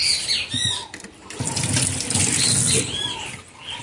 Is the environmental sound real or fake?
real